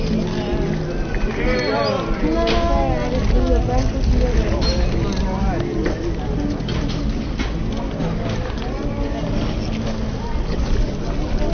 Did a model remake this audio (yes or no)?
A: no